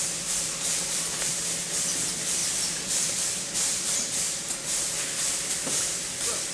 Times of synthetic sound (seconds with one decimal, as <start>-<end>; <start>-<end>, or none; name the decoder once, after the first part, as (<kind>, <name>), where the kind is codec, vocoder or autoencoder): 0.0-6.5 (vocoder, BigVGAN v2)